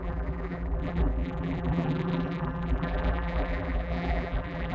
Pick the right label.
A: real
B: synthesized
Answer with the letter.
B